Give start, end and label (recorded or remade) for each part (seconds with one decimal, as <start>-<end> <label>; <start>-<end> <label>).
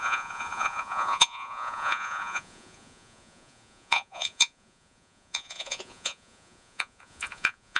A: 0.0-7.8 remade